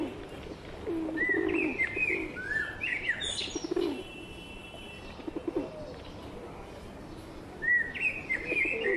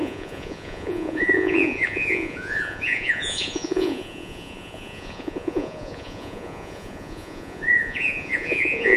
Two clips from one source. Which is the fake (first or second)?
second